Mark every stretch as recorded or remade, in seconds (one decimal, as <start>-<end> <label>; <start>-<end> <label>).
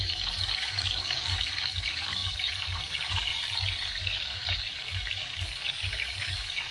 0.0-3.3 remade; 3.3-3.9 recorded; 3.9-6.7 remade